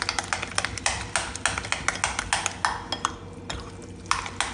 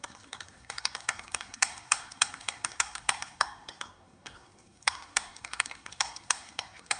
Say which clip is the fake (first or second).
second